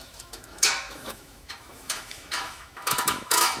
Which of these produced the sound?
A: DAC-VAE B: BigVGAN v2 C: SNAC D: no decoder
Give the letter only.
A